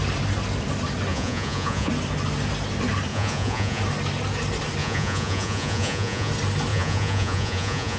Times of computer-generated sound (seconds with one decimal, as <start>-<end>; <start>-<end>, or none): 1.1-1.9; 3.1-3.8; 4.8-6.3; 6.7-8.0